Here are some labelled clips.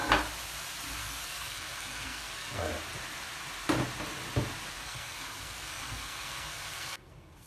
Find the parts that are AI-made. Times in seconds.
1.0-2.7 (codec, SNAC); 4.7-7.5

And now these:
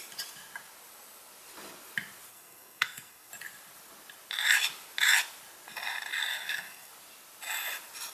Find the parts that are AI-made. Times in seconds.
2.3-3.3 (codec, SNAC); 6.3-6.9

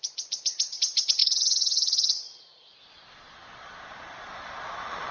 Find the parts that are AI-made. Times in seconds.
0.0-5.1 (vocoder, Vocos)

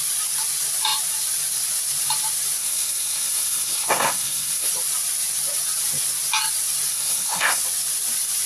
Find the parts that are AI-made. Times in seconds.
2.6-4.7 (codec, SNAC); 6.9-7.6

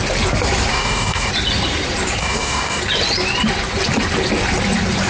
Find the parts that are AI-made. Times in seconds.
0.7-1.3 (codec, DAC); 2.2-2.8

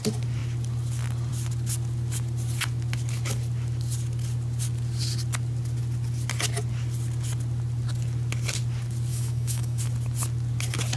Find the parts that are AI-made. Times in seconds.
9.1-9.8 (autoencoder, DAC-VAE)